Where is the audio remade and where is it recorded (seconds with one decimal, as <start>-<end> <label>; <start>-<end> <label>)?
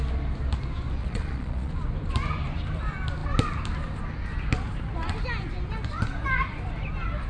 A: 0.0-1.0 recorded; 1.0-1.7 remade; 1.7-7.3 recorded